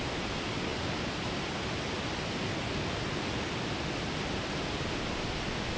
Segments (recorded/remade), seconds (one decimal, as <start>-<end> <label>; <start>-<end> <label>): 0.0-5.8 recorded